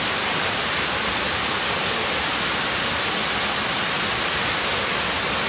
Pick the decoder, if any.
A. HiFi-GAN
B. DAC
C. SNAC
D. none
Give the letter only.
D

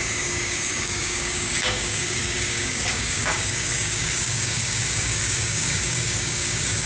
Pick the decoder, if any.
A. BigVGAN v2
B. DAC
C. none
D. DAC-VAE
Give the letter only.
B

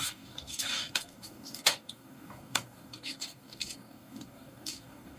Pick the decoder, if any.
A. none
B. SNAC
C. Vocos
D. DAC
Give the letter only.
D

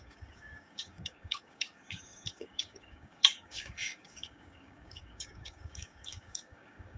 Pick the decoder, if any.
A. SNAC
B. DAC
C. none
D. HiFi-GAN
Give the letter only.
B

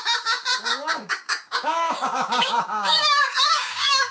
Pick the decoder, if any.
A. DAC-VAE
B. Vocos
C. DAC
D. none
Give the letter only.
C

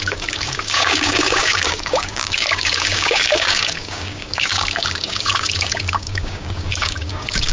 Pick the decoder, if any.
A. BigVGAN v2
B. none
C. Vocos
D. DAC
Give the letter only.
D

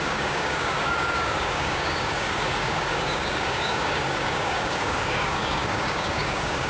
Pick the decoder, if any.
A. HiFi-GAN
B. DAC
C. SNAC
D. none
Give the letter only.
B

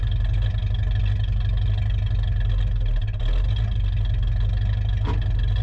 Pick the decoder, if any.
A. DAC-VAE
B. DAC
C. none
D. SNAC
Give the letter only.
C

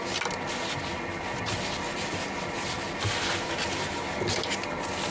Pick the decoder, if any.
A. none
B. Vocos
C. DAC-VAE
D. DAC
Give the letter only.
A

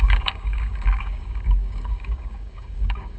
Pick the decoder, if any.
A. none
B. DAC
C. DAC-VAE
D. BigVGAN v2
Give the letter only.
B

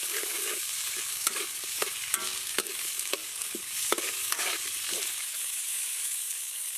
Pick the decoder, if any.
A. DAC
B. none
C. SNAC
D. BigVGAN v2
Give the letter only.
A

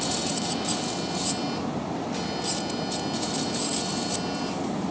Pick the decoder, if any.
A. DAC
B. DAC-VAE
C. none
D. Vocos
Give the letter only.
C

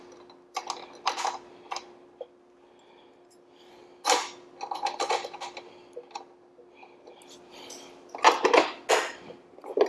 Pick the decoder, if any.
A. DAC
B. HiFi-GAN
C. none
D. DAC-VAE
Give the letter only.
C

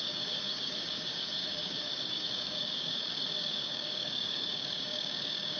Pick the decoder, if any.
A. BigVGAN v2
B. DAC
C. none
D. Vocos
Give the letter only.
B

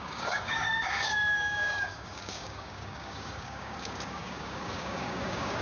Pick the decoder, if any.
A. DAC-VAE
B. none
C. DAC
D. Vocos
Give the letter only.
C